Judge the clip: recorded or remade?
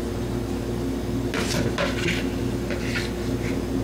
recorded